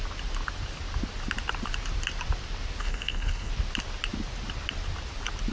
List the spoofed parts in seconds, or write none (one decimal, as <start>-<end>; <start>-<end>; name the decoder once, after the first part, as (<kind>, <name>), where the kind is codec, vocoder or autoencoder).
2.8-3.5 (codec, HILCodec)